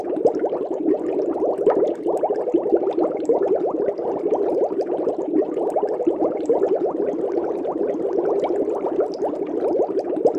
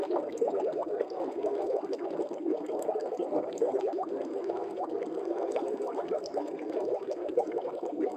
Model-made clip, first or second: second